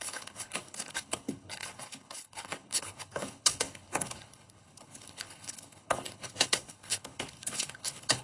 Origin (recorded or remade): remade